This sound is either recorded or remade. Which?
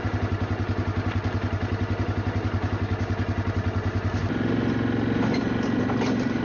recorded